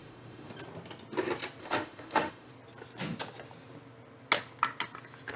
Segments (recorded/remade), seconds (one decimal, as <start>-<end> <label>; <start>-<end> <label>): 0.0-0.5 remade; 0.5-1.6 recorded; 1.6-2.5 remade; 2.5-5.4 recorded

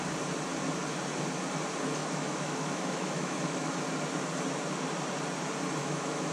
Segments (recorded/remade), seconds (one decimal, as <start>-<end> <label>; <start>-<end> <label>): 0.0-2.0 recorded; 2.0-3.7 remade; 3.7-5.8 recorded; 5.8-6.3 remade

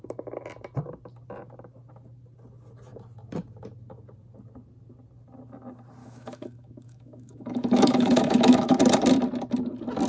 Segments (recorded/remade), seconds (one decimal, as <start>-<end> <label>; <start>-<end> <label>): 0.0-6.0 recorded; 6.0-8.8 remade; 8.8-10.1 recorded

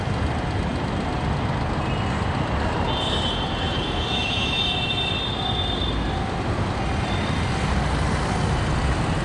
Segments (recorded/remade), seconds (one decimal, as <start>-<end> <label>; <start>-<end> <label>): 0.0-4.1 recorded; 4.1-4.6 remade; 4.6-9.2 recorded

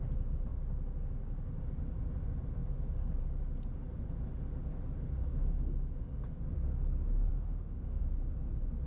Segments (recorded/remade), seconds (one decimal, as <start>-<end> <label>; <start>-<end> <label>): 0.0-7.3 recorded; 7.3-8.0 remade; 8.0-8.9 recorded

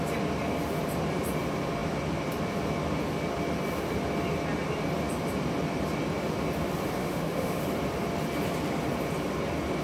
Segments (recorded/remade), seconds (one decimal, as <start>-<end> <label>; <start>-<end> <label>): 0.0-7.0 recorded; 7.0-7.6 remade; 7.6-9.8 recorded

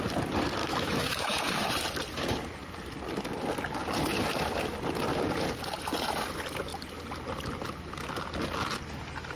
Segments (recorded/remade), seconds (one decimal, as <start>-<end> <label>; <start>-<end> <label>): 0.0-0.6 recorded; 0.6-1.7 remade; 1.7-9.4 recorded

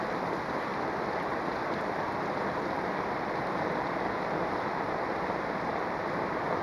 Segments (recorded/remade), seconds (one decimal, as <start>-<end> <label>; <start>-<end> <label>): 0.0-6.6 recorded